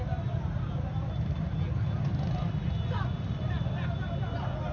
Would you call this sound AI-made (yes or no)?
no